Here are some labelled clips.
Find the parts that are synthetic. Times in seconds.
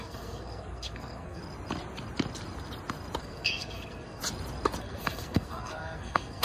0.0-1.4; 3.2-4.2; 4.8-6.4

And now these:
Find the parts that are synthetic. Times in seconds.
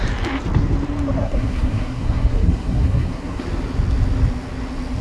1.2-3.4